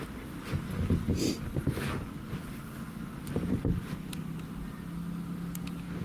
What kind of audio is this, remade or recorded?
recorded